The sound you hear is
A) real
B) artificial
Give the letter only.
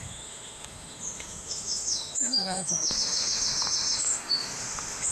B